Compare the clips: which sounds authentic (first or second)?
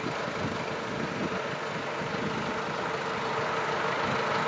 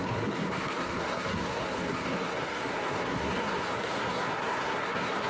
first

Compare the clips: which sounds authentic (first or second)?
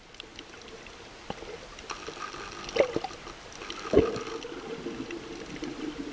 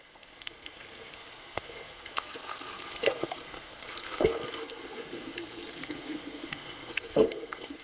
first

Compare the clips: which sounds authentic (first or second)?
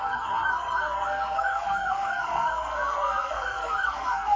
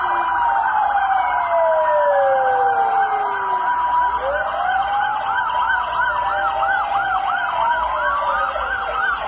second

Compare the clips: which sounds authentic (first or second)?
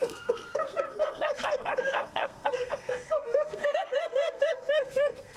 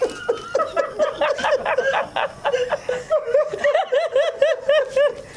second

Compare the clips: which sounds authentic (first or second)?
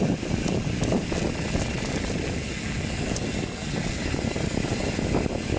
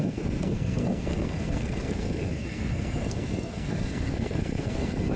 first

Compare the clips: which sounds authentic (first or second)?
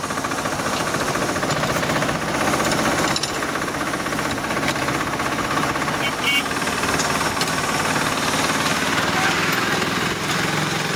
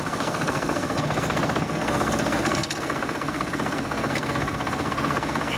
first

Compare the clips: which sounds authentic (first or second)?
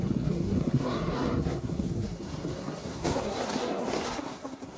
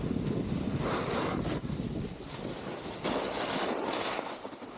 second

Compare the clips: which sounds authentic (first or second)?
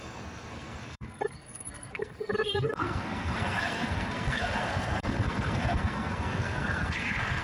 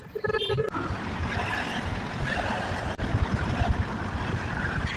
second